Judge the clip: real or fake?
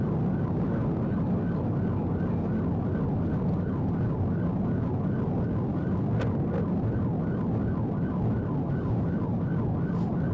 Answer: real